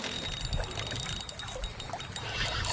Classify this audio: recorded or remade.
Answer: recorded